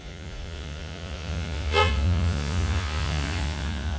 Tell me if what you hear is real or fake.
fake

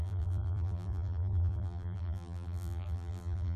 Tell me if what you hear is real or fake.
fake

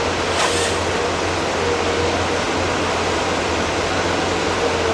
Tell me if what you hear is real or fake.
real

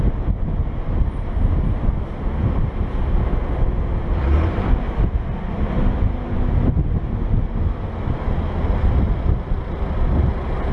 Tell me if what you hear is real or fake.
real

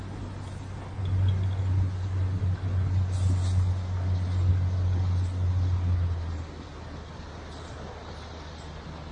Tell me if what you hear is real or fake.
real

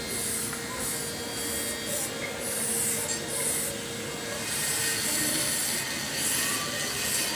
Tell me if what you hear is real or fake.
real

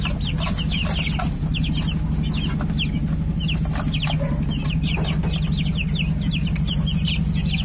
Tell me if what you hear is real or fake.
real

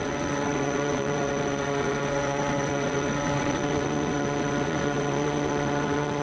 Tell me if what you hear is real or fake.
fake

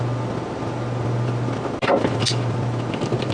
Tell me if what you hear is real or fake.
real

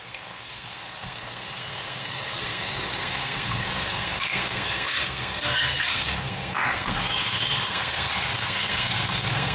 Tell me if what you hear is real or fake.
fake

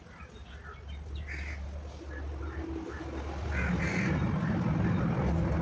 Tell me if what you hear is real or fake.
real